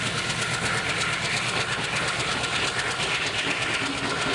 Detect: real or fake real